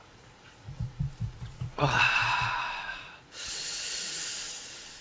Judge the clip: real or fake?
fake